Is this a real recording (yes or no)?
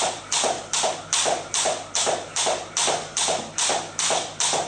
yes